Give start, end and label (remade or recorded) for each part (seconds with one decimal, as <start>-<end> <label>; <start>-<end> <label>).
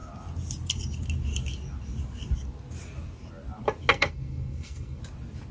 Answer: 0.0-3.9 recorded; 3.9-5.0 remade; 5.0-5.5 recorded